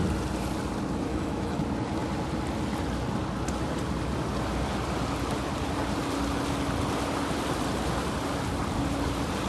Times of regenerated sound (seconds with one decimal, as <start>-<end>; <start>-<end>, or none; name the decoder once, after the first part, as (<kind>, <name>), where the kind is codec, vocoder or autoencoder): 1.1-1.6 (autoencoder, DAC-VAE)